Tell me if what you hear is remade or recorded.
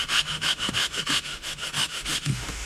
remade